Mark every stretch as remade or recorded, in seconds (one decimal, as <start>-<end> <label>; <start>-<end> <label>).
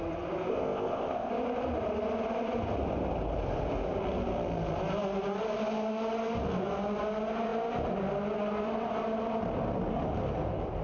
0.0-0.5 recorded; 0.5-1.3 remade; 1.3-10.8 recorded